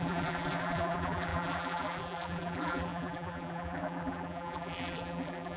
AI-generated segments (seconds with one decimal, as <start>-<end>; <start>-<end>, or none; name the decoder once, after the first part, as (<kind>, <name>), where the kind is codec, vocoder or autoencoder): 0.0-5.6 (vocoder, BigVGAN v2)

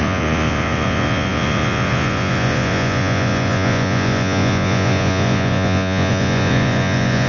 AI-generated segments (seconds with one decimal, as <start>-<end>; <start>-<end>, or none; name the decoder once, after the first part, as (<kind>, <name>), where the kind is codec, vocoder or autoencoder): 0.0-7.3 (vocoder, Vocos)

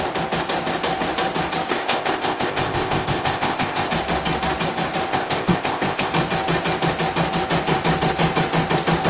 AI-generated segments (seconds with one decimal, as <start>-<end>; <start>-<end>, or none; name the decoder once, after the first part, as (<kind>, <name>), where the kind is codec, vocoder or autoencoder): 1.7-3.9 (codec, ZipCodec); 5.1-6.1

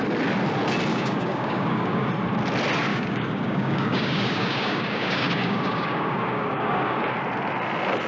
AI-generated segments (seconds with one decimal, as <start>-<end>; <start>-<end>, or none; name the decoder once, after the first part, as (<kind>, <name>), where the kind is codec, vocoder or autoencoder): 0.9-2.1 (codec, DAC); 2.9-7.0

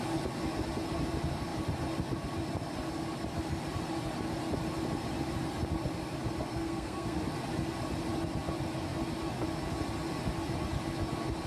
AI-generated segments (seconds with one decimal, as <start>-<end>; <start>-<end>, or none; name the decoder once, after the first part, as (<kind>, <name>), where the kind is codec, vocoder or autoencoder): 6.5-7.2 (codec, SNAC)

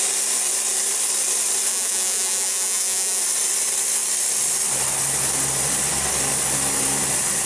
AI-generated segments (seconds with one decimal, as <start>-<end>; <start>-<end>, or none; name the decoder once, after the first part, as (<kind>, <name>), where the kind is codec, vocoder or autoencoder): 1.7-3.2 (vocoder, Vocos)

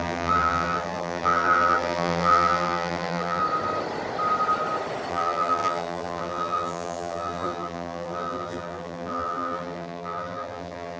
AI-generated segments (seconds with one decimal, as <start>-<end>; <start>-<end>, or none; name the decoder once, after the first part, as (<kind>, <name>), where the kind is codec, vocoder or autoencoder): 0.0-3.4 (vocoder, BigVGAN v2); 5.1-11.0

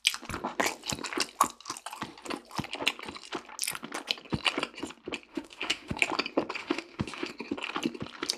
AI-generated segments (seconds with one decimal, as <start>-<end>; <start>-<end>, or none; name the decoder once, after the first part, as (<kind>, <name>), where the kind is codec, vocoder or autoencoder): 5.3-6.0 (autoencoder, DAC-VAE); 6.6-7.3